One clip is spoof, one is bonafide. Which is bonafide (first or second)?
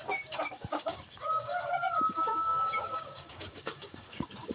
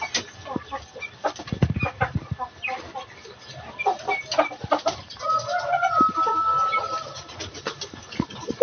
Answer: second